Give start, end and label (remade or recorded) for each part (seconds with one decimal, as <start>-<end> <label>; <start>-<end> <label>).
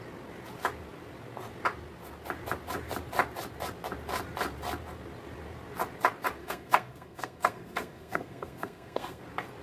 0.0-6.4 recorded; 6.4-9.2 remade; 9.2-9.6 recorded